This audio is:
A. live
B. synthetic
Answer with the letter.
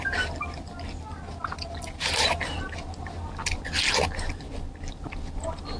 A